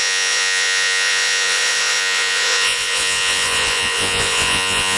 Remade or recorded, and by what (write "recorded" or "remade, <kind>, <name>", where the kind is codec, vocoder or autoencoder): remade, vocoder, Vocos